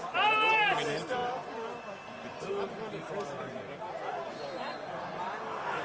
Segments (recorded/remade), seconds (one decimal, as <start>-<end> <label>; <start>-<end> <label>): 0.0-5.8 recorded